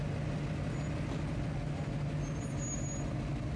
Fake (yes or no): no